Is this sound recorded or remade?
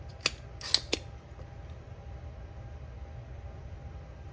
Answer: recorded